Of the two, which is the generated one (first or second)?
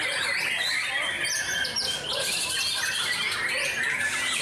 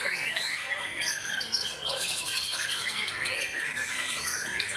second